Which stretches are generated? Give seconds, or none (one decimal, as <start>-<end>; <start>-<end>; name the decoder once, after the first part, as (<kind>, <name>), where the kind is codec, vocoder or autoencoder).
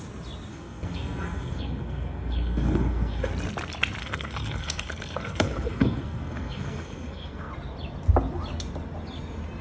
0.5-3.3 (codec, SNAC); 4.0-7.5